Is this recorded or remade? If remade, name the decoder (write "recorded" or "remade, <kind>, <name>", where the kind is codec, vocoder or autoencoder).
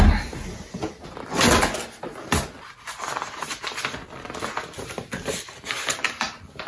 recorded